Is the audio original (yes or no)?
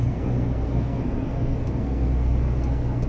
no